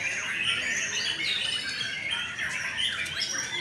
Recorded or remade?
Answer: recorded